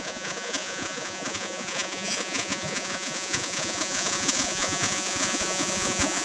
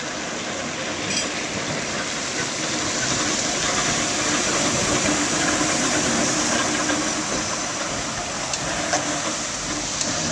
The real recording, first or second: second